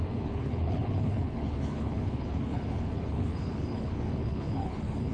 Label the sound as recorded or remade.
remade